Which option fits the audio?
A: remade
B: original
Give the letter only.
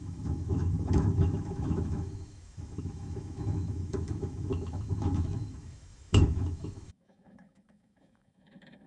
A